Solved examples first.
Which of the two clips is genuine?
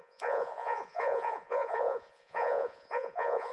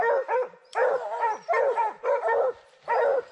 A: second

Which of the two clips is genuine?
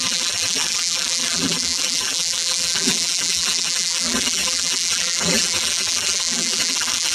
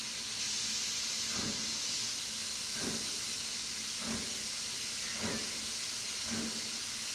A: second